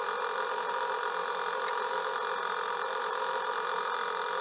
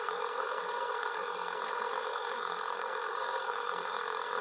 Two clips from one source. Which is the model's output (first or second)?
second